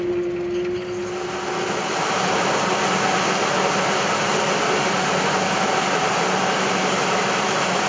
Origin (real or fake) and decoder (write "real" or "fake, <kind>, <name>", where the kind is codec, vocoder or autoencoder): real